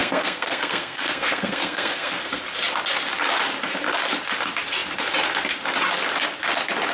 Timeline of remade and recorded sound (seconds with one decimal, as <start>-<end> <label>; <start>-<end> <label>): 0.0-2.4 remade; 2.4-6.9 recorded